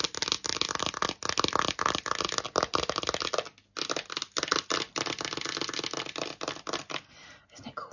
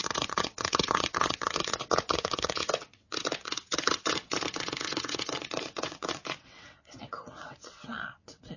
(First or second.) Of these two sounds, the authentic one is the first